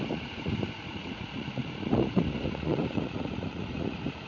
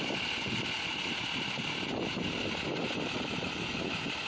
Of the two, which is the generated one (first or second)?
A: first